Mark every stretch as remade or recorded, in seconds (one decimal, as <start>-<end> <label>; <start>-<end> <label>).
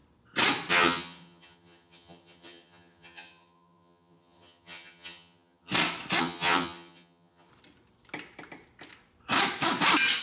0.0-0.7 recorded; 0.7-5.7 remade; 5.7-6.2 recorded; 6.2-7.5 remade; 7.5-10.2 recorded